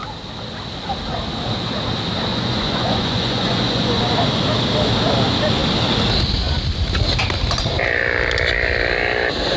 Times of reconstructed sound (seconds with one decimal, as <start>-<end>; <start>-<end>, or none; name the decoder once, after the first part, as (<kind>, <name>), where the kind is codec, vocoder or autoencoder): 2.3-4.0 (vocoder, Vocos)

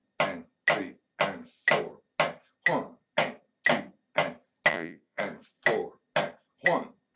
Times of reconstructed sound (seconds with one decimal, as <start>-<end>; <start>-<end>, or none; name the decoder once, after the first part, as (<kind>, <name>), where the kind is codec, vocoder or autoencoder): 4.7-5.2 (vocoder, Vocos)

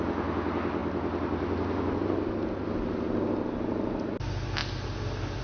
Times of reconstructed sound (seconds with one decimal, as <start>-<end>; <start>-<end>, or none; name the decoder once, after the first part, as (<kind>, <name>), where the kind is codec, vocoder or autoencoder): none

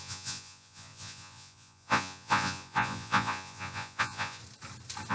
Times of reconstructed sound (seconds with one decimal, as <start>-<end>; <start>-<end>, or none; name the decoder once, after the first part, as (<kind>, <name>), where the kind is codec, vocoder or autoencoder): 0.0-4.4 (vocoder, Vocos)